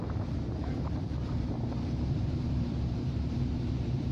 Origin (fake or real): fake